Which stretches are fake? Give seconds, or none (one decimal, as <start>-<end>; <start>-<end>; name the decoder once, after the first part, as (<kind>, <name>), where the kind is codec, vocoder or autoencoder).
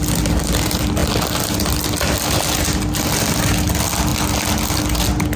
none